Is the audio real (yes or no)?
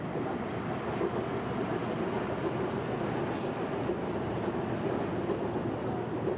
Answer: yes